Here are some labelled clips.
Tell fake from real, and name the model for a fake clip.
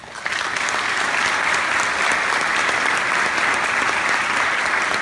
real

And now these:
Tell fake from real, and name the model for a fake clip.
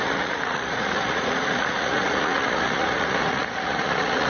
fake, vocoder, Vocos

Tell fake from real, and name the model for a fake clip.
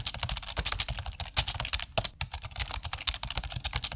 real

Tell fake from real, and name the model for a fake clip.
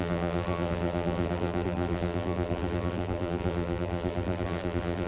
fake, vocoder, BigVGAN v2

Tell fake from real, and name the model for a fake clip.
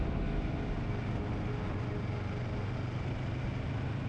real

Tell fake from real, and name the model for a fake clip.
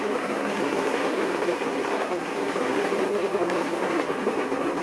fake, codec, SNAC